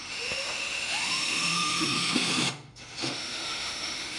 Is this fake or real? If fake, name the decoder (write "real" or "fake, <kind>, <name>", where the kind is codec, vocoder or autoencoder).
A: fake, autoencoder, DAC-VAE